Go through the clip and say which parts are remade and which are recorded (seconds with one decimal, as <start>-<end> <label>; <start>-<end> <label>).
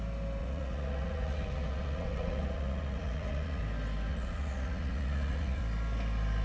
0.0-0.4 recorded; 0.4-3.6 remade; 3.6-4.1 recorded; 4.1-5.6 remade; 5.6-6.4 recorded